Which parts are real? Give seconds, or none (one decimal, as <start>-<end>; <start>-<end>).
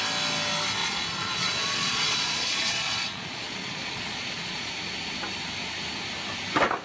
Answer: 0.0-0.8; 4.7-6.8